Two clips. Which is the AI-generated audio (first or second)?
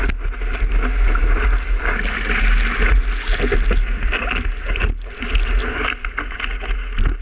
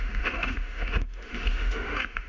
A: second